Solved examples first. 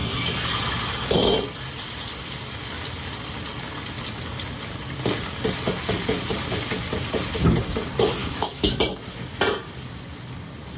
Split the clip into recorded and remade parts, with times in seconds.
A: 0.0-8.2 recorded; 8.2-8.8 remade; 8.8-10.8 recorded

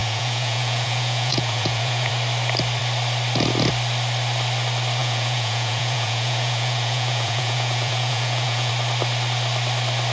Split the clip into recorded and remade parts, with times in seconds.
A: 0.0-2.1 remade; 2.1-5.0 recorded; 5.0-8.7 remade; 8.7-10.1 recorded